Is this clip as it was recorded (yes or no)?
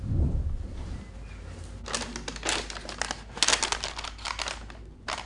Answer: yes